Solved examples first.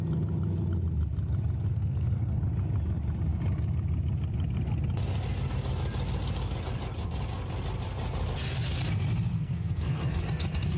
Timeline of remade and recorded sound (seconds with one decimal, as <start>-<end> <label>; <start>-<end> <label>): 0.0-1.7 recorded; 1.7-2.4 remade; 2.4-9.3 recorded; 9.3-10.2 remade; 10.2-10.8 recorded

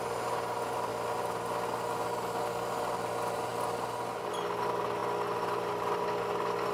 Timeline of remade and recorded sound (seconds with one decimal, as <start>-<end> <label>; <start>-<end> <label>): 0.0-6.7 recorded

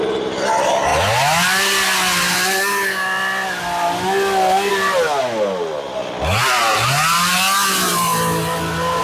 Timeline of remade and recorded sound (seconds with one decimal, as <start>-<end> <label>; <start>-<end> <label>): 0.0-9.0 recorded

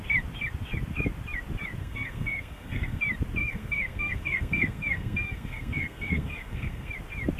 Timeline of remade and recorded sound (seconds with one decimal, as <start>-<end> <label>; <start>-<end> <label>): 0.0-1.8 recorded; 1.8-3.0 remade; 3.0-3.4 recorded; 3.4-6.9 remade; 6.9-7.4 recorded